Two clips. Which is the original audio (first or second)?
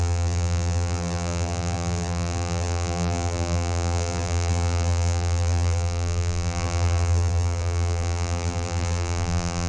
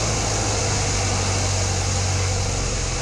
second